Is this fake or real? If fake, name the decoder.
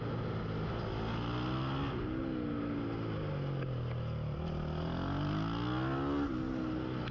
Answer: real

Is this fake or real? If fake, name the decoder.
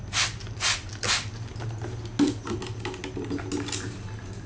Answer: real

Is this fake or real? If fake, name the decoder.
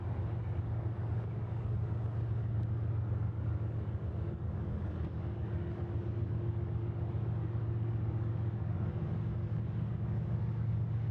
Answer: fake, codec, DAC